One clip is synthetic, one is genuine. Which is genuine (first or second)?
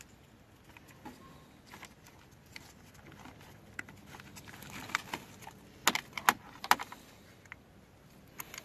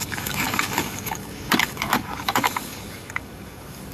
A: first